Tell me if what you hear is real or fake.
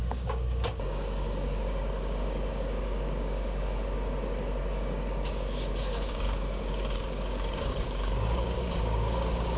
fake